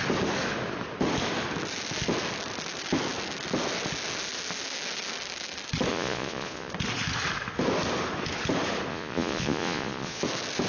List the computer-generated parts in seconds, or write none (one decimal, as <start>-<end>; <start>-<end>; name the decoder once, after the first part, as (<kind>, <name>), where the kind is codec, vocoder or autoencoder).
5.9-6.7 (vocoder, Vocos); 8.9-10.2